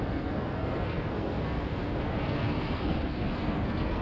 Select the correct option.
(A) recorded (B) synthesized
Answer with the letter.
B